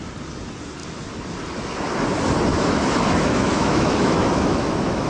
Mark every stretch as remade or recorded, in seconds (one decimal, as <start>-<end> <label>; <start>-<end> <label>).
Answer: 0.0-2.5 recorded; 2.5-5.1 remade